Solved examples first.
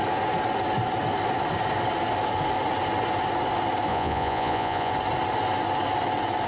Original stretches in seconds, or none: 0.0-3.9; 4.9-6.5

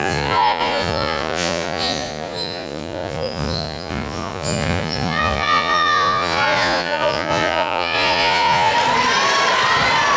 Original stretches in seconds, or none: 8.7-10.2

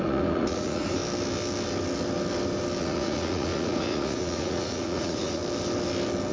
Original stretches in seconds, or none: 1.0-2.8; 5.4-6.3

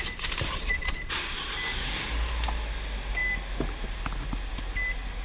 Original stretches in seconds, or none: 0.0-0.5; 1.5-5.2

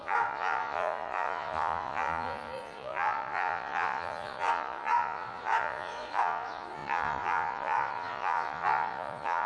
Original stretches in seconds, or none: none

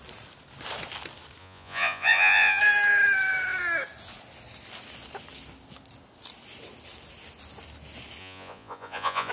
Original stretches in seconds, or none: 0.0-1.4; 2.6-8.2